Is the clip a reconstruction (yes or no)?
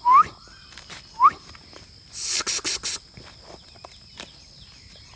no